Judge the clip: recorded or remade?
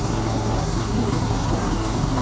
remade